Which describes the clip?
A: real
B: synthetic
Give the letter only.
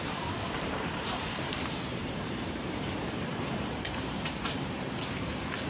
B